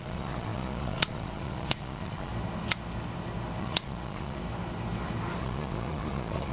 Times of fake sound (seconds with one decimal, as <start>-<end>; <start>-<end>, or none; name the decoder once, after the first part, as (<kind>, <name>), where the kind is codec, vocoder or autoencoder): 0.0-2.3 (vocoder, Vocos); 3.6-4.4; 5.4-6.5